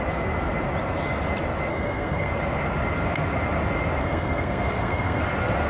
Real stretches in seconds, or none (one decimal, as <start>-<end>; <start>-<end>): 0.0-1.7; 2.3-4.0; 5.2-5.7